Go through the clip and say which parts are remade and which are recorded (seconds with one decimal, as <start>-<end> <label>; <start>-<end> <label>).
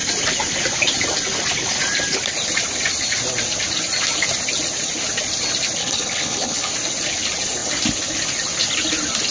0.0-5.8 recorded; 5.8-6.7 remade; 6.7-9.3 recorded